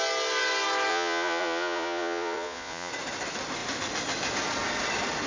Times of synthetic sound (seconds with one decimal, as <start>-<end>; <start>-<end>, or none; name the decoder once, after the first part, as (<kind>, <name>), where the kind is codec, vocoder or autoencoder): 0.9-2.9 (vocoder, Vocos)